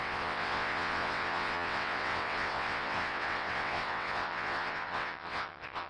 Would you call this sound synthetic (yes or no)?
yes